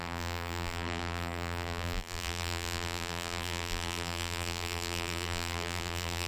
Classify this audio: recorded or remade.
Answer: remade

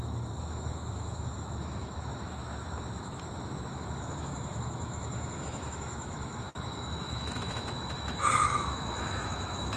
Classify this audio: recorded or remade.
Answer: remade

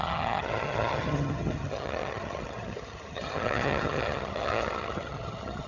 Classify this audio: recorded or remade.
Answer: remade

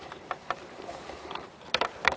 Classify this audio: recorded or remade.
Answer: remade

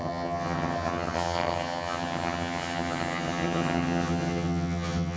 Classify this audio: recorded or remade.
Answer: remade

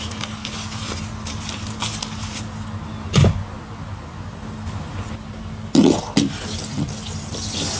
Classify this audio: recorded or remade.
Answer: recorded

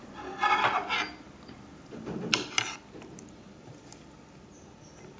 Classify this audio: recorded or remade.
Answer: recorded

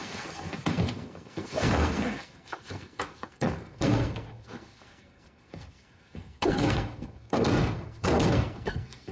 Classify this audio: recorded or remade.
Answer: remade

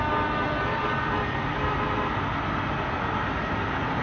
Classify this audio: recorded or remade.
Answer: recorded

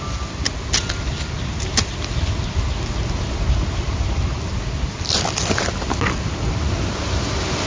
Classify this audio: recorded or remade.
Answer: recorded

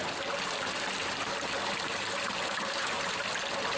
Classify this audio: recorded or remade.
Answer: recorded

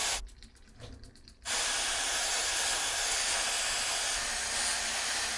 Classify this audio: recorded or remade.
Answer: recorded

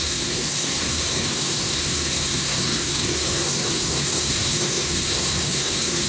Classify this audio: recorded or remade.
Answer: remade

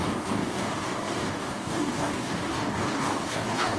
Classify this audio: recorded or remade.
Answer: remade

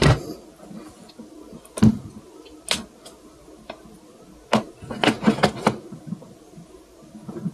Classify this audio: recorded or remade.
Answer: recorded